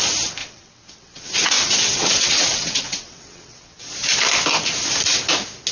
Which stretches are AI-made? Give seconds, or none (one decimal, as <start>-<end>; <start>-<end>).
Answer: 0.4-3.8